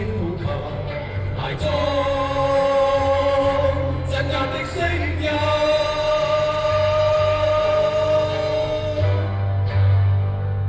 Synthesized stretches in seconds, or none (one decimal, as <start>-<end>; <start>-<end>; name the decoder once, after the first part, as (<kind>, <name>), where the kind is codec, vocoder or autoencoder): 1.0-1.6 (codec, HILCodec)